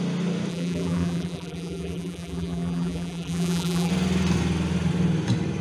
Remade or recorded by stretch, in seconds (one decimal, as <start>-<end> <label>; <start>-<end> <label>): 0.0-0.5 recorded; 0.5-3.9 remade; 3.9-5.6 recorded